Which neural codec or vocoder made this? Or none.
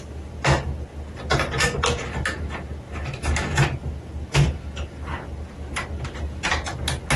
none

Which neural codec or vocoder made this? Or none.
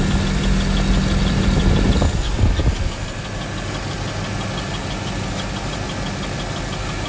none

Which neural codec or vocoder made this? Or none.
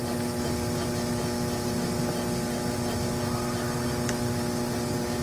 none